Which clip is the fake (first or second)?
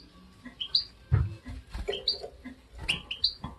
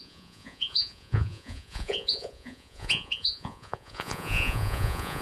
second